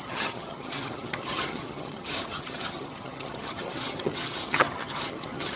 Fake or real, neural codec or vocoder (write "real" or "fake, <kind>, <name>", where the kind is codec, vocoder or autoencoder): fake, vocoder, HiFi-GAN